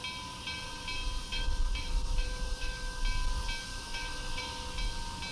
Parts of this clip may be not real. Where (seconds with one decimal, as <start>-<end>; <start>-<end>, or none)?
1.3-3.0; 3.7-4.4

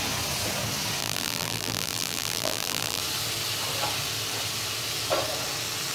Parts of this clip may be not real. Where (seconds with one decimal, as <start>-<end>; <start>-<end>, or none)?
1.0-3.0